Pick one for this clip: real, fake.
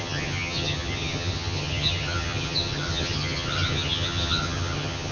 fake